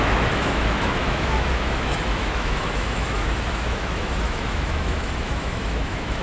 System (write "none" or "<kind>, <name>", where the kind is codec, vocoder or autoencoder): autoencoder, DAC-VAE